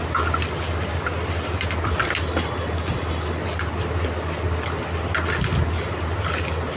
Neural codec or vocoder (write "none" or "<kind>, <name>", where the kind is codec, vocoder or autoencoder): none